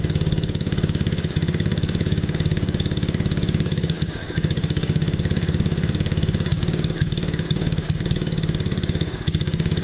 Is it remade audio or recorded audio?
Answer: remade